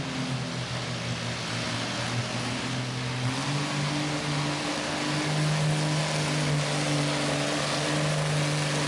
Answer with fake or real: real